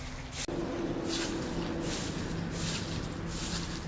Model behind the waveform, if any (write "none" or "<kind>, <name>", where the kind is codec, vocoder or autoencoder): none